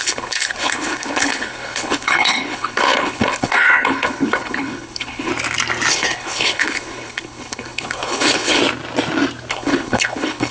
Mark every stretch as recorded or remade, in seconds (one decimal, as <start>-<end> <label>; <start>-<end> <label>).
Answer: 0.0-5.3 remade; 5.3-5.9 recorded; 5.9-8.6 remade; 8.6-9.5 recorded; 9.5-10.5 remade